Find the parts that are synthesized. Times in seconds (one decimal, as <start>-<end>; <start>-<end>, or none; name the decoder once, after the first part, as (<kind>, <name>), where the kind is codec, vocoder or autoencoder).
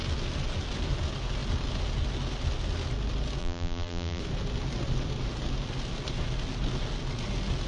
3.4-4.2 (vocoder, BigVGAN v2)